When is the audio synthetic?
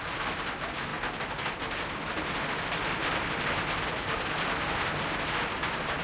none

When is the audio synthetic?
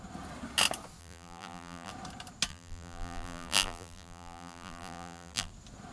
1.0-1.9; 2.5-5.5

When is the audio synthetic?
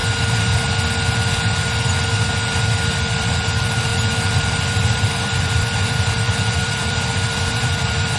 2.9-3.9; 4.5-8.2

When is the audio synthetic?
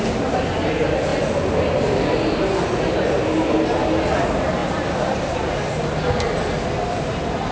4.6-5.4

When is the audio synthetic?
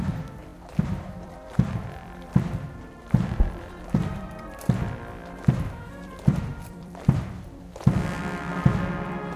0.0-8.5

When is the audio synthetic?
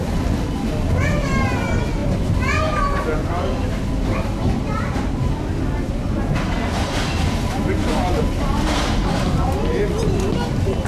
none